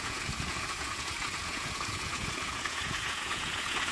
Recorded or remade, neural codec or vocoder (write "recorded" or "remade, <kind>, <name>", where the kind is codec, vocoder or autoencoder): remade, vocoder, Vocos